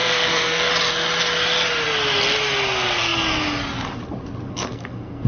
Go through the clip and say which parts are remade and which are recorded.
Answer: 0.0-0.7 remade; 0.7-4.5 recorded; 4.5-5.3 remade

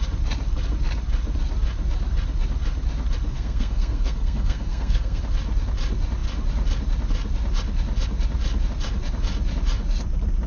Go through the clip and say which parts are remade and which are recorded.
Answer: 0.0-3.3 recorded; 3.3-5.2 remade; 5.2-10.5 recorded